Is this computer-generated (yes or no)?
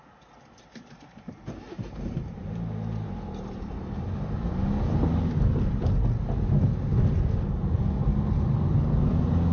no